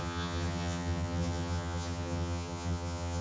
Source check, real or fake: fake